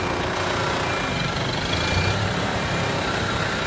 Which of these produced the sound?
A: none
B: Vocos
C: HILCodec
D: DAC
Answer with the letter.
A